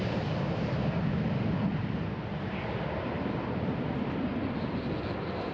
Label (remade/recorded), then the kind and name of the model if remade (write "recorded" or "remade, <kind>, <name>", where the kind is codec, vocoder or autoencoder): recorded